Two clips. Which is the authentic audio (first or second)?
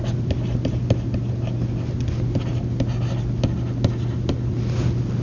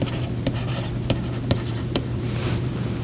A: first